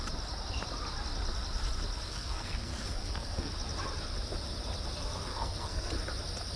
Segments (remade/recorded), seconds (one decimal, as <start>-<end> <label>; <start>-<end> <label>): 0.0-2.1 recorded; 2.1-3.5 remade; 3.5-5.3 recorded; 5.3-5.9 remade; 5.9-6.6 recorded